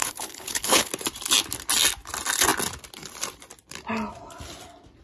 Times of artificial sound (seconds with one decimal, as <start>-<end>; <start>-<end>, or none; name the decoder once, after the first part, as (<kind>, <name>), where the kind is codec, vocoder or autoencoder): 0.0-0.9 (codec, HILCodec)